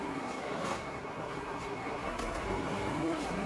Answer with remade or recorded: remade